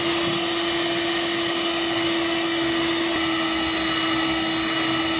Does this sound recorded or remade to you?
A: recorded